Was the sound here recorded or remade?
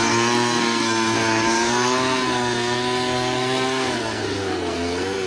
remade